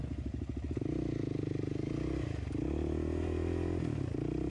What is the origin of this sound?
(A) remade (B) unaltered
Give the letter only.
B